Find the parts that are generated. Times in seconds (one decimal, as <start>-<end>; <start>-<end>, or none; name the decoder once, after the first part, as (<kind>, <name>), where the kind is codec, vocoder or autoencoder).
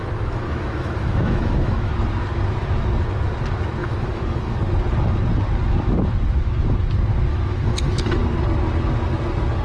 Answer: 0.0-1.9 (autoencoder, DAC-VAE); 3.8-4.6; 7.3-8.2